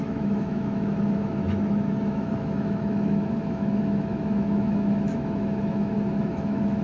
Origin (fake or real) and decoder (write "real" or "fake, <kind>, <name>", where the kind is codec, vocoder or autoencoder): fake, autoencoder, DAC-VAE